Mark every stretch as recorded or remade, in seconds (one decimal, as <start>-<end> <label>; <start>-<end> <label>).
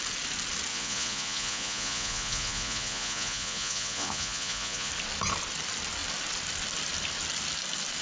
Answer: 0.0-0.7 recorded; 0.7-4.9 remade; 4.9-8.0 recorded